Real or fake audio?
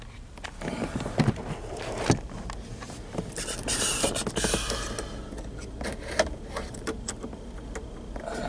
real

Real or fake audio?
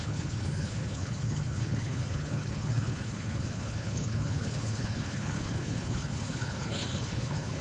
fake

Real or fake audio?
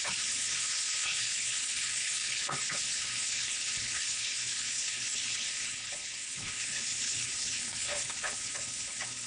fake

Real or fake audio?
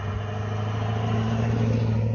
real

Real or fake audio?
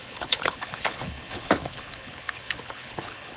fake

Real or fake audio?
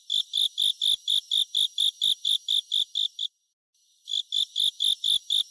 real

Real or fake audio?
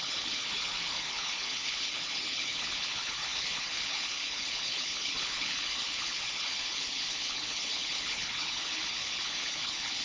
fake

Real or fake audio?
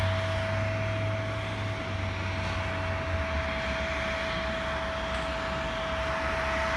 real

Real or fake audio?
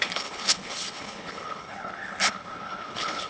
fake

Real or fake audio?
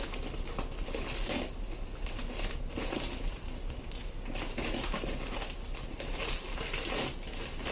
real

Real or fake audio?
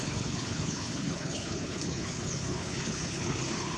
fake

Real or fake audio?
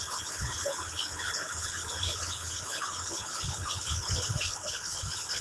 fake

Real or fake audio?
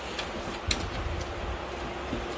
real